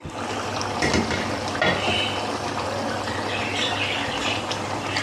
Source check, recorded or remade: remade